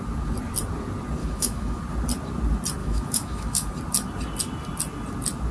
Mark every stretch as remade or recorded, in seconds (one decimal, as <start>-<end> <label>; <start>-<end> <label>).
0.0-1.2 recorded; 1.2-1.8 remade; 1.8-2.8 recorded; 2.8-3.7 remade; 3.7-5.5 recorded